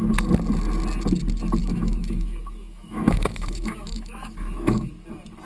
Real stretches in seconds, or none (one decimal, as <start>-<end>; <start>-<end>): 0.0-1.6; 4.9-5.5